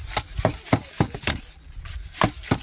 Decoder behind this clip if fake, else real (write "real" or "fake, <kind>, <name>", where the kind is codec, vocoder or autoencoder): real